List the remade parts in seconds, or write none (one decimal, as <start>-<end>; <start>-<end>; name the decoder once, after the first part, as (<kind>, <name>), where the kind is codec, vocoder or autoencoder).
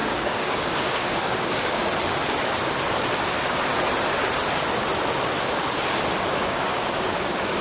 0.0-1.8 (codec, DAC); 6.3-7.6